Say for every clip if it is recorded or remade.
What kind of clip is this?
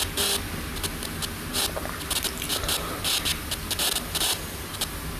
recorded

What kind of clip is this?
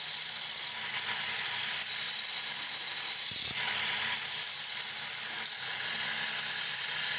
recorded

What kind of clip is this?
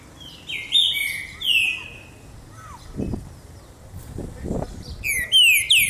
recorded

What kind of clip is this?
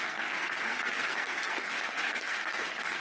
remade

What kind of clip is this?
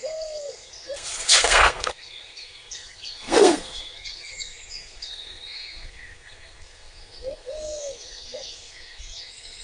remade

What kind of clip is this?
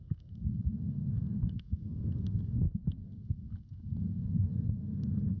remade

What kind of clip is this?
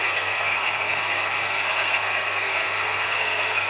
remade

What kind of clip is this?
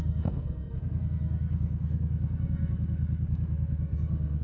remade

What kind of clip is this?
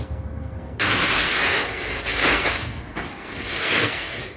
remade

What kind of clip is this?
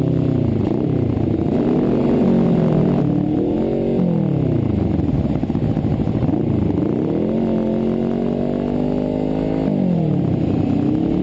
recorded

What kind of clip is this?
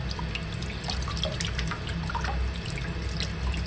recorded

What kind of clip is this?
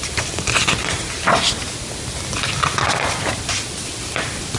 recorded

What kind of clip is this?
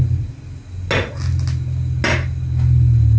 recorded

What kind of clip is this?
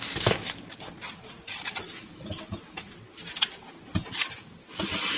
recorded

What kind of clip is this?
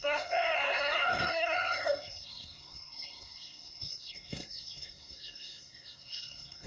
remade